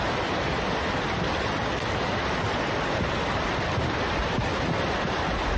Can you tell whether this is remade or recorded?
recorded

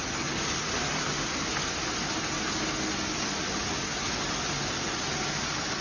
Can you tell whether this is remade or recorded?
recorded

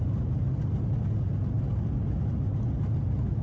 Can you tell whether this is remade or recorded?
recorded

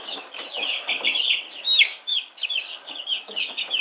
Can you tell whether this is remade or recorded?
remade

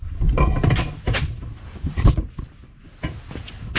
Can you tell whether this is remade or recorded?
recorded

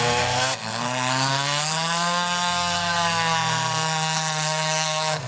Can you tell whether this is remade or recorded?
remade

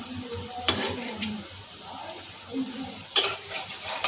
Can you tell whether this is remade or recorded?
remade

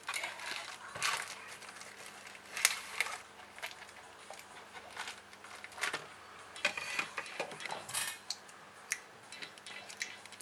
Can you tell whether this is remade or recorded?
recorded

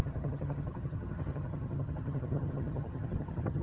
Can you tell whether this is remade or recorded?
remade